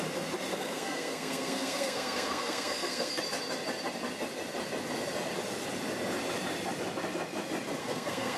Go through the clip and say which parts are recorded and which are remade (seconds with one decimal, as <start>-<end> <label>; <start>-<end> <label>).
0.0-0.5 recorded; 0.5-3.2 remade; 3.2-7.8 recorded; 7.8-8.4 remade